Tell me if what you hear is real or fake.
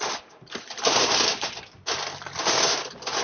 real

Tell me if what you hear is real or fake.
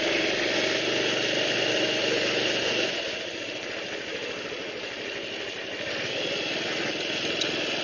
real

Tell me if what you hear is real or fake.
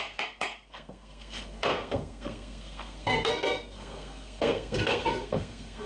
fake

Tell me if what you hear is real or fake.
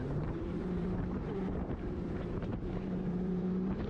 fake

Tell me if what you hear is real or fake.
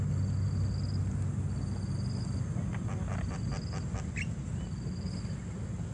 real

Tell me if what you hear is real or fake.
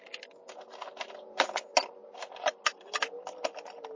real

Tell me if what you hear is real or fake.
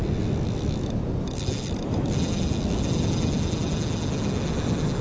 real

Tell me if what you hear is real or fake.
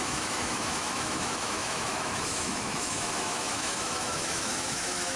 fake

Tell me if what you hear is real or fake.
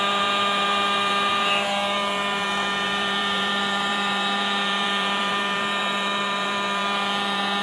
fake